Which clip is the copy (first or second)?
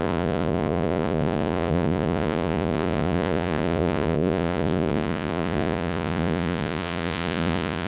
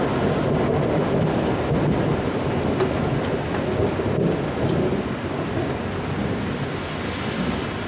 first